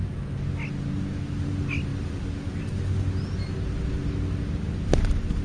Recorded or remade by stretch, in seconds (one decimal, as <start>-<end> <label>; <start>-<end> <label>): 0.0-5.4 recorded